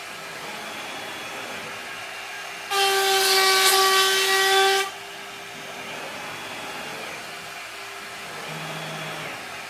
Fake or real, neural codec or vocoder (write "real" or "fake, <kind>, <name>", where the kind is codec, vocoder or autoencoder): real